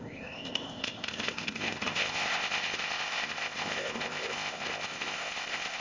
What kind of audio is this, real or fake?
fake